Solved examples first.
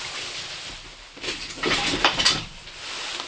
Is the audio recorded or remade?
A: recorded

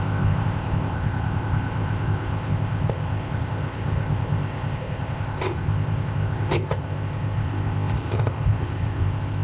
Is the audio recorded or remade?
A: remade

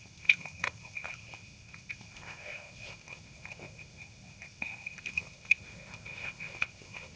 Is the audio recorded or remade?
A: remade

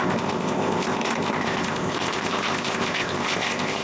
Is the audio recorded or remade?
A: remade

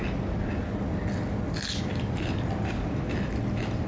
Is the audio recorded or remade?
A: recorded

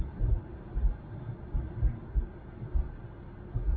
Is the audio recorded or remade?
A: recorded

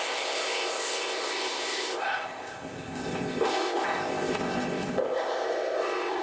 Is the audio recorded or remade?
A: remade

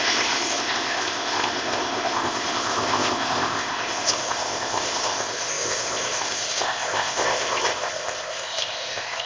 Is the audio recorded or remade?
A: remade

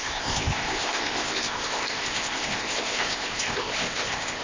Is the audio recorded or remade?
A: remade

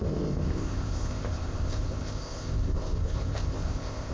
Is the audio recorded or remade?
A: remade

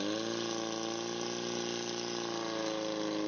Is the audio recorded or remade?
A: recorded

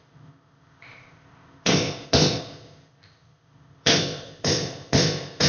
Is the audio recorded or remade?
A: remade